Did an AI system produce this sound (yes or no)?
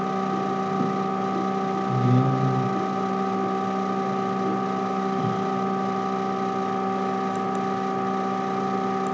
no